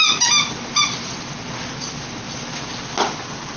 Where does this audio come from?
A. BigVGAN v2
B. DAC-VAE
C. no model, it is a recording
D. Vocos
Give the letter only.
C